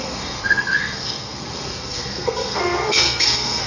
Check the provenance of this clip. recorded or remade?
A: remade